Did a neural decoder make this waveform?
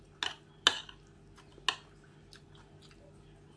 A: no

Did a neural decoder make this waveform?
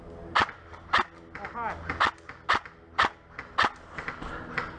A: no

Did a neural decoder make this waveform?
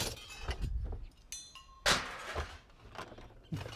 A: no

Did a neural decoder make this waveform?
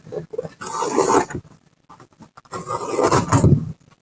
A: no